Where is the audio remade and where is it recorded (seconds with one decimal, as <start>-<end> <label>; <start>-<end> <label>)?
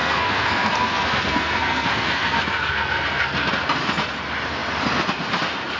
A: 0.0-3.5 remade; 3.5-5.8 recorded